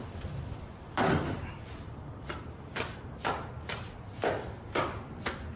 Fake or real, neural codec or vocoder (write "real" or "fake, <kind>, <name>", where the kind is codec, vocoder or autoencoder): fake, vocoder, BigVGAN v2